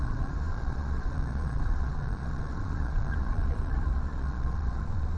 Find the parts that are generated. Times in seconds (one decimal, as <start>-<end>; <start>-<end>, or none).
0.0-5.2